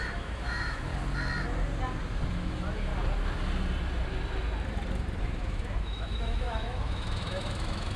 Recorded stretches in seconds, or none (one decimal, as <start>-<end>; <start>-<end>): 0.9-2.3; 2.9-5.2